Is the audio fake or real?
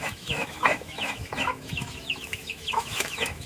fake